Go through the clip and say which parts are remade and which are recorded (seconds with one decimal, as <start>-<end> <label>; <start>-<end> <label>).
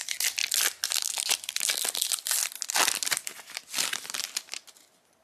0.0-5.2 recorded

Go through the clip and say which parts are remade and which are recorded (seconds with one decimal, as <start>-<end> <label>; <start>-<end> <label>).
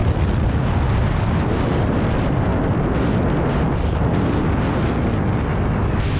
0.0-6.2 recorded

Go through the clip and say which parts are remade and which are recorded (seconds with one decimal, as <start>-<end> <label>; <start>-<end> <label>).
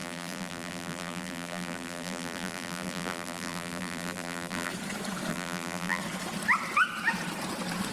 0.0-4.7 remade; 4.7-5.3 recorded; 5.3-6.0 remade; 6.0-7.9 recorded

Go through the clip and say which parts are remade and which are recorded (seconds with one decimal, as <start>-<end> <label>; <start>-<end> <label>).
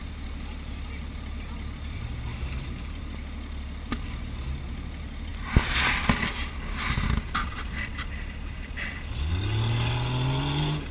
0.0-2.3 recorded; 2.3-3.0 remade; 3.0-10.9 recorded